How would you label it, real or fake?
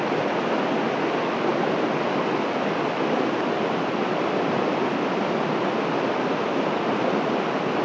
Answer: real